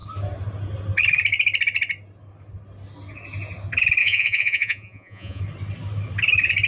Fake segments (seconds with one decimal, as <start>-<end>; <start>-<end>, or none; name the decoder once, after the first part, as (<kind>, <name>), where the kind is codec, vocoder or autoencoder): 4.0-5.4 (vocoder, Vocos)